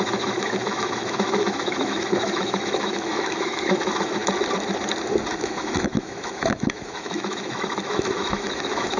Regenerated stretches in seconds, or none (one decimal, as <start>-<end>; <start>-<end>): 0.0-4.2; 5.4-9.0